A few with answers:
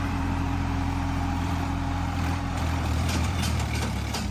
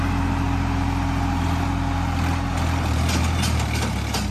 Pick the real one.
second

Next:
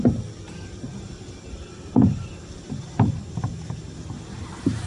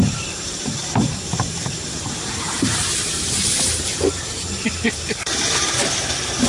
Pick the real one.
first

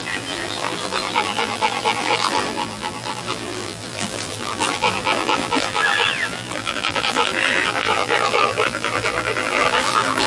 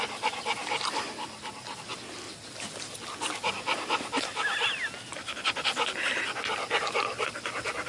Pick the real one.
second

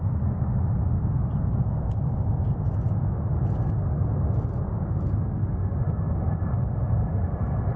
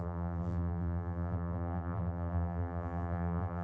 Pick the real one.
first